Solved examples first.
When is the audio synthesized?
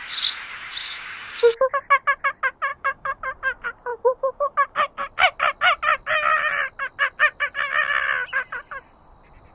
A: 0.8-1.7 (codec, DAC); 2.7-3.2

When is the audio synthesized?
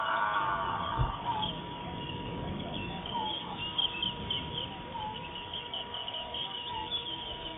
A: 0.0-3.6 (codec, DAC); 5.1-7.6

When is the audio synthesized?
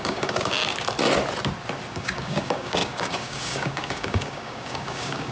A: 0.0-0.6 (codec, DAC); 1.9-5.3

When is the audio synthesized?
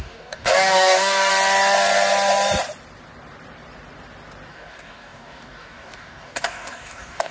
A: 0.0-1.3 (codec, DAC); 4.5-7.3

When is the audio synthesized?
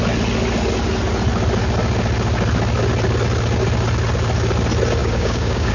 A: 5.0-5.7 (codec, DAC)